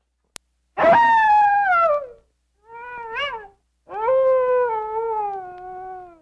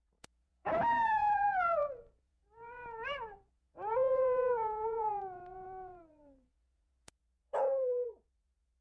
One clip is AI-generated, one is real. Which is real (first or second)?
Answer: first